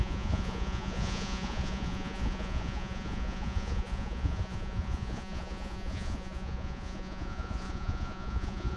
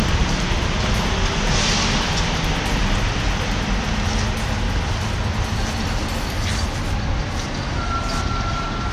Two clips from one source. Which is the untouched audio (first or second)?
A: second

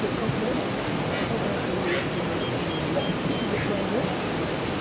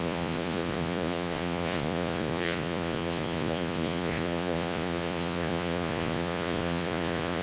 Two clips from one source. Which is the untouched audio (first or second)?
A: first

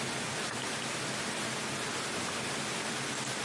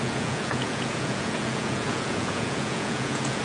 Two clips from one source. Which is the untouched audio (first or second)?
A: first